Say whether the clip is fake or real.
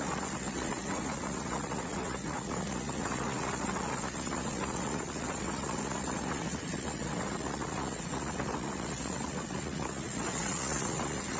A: fake